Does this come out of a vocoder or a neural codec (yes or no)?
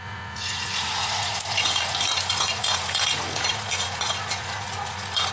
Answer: yes